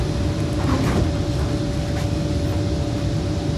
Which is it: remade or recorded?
recorded